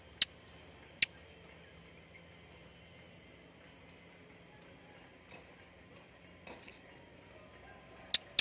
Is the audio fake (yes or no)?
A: no